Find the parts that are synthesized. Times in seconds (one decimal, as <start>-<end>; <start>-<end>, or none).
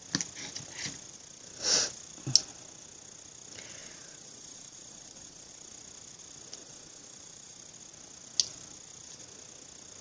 3.8-5.5; 6.6-7.6